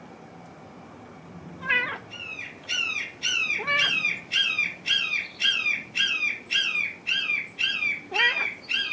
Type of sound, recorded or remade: recorded